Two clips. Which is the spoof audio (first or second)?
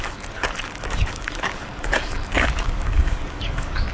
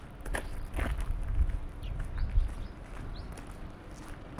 first